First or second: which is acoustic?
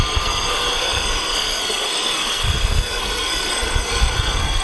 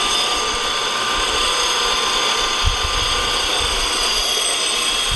second